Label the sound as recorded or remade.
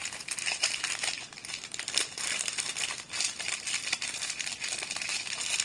recorded